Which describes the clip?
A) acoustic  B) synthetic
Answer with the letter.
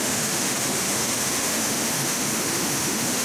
B